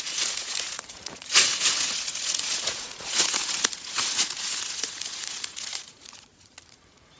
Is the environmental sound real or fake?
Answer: fake